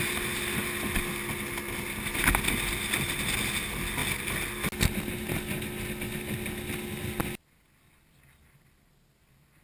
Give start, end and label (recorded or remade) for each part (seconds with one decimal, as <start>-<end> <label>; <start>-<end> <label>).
0.0-9.6 recorded